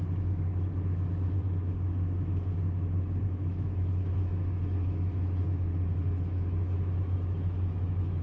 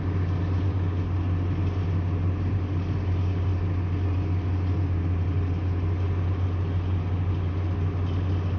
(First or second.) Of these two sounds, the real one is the second